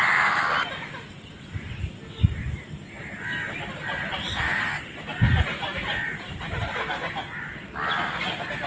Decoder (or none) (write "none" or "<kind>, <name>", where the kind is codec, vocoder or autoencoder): none